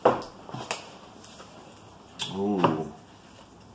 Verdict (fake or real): real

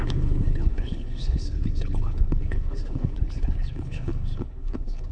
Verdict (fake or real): fake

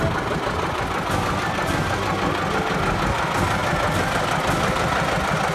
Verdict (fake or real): real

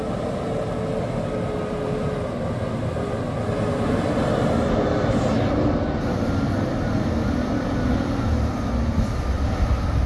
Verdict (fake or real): real